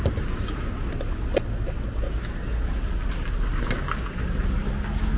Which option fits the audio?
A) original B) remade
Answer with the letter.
A